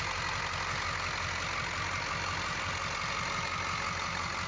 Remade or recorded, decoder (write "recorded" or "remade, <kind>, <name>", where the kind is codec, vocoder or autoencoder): recorded